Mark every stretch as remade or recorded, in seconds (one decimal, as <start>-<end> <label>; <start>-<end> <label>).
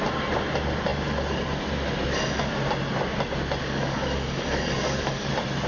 0.0-3.6 recorded; 3.6-5.3 remade; 5.3-5.7 recorded